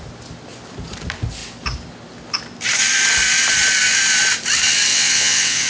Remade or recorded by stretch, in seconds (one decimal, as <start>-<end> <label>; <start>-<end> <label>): 0.0-4.9 recorded; 4.9-5.7 remade